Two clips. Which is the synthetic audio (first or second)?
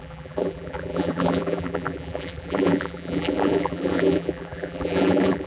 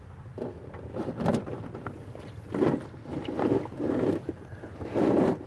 first